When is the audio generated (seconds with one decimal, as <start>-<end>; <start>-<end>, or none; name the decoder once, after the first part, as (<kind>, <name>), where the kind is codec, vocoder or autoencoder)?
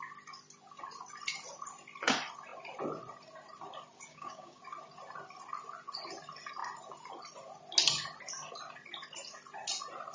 4.1-4.6 (codec, DAC)